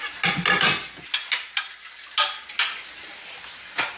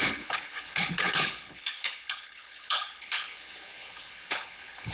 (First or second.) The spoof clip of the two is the second